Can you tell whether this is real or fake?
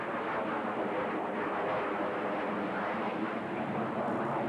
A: real